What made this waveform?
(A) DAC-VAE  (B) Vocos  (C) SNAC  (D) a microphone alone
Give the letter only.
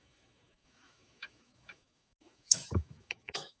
A